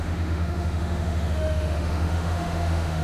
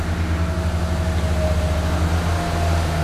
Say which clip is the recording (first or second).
second